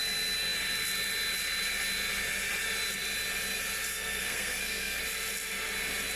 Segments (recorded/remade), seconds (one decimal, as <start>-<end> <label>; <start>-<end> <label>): 0.0-3.9 recorded; 3.9-5.0 remade; 5.0-6.2 recorded